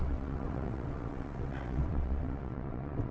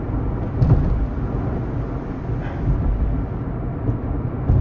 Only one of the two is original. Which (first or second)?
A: second